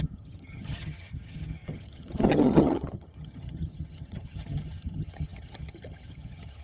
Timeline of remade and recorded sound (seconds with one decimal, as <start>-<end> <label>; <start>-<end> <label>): 0.0-6.6 remade